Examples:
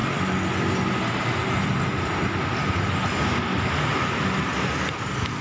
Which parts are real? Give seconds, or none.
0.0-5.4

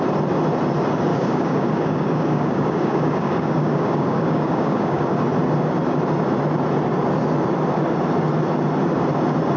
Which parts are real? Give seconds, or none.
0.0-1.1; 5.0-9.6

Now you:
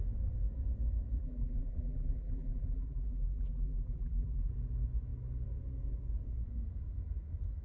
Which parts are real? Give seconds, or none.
0.0-1.2; 4.5-7.6

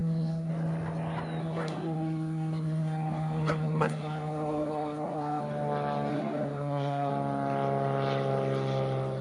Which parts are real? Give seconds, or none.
0.5-1.4; 5.4-6.1; 7.1-9.2

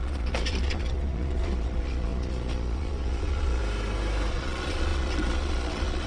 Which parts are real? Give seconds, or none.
3.6-4.3

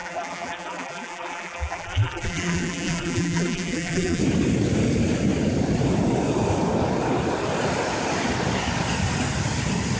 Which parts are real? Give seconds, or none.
4.2-10.0